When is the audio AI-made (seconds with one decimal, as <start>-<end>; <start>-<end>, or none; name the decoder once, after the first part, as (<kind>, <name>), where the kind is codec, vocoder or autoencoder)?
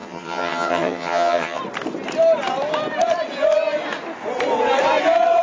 0.0-1.6 (vocoder, HiFi-GAN)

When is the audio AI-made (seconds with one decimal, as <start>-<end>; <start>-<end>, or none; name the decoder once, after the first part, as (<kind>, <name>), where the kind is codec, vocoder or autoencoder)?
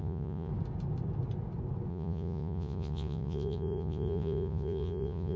0.0-0.5 (vocoder, Vocos); 1.9-5.4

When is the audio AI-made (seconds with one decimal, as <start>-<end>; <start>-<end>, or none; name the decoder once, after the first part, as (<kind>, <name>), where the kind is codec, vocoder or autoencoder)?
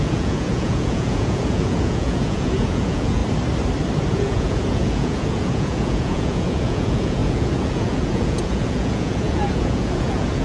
0.0-3.2 (vocoder, Vocos); 4.1-10.4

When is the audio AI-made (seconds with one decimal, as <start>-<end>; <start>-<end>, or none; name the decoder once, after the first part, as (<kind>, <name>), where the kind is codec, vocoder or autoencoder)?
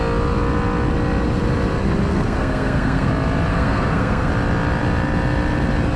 2.1-3.1 (codec, SNAC); 3.5-4.3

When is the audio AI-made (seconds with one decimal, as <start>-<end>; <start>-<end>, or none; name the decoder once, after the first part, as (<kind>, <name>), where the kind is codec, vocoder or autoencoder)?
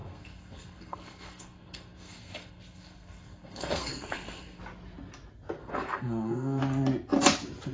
0.0-4.6 (codec, SNAC); 5.6-6.6